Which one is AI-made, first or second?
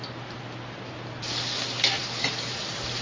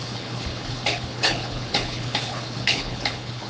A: second